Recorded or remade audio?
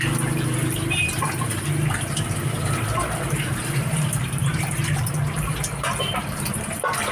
remade